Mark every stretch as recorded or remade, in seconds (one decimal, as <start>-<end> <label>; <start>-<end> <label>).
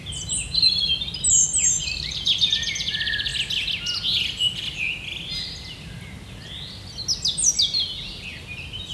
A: 0.0-8.9 recorded